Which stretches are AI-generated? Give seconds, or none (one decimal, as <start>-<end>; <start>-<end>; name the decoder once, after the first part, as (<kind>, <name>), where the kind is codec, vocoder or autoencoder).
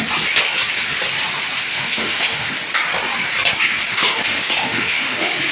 1.7-2.5 (autoencoder, DAC-VAE); 3.9-5.5